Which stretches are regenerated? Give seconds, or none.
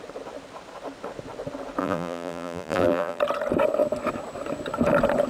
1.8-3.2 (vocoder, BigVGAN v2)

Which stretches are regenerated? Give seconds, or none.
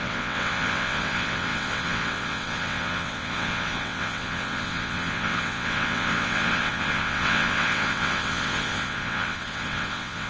0.0-10.3 (vocoder, WaveNeXt)